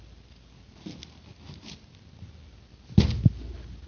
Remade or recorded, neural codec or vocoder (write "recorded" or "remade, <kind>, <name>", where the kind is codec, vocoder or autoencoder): recorded